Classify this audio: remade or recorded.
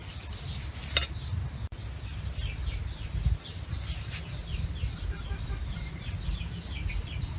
recorded